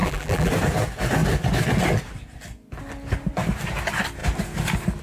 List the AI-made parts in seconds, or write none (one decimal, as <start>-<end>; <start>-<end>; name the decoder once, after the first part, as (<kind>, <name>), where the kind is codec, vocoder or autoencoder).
0.0-0.5 (vocoder, BigVGAN v2)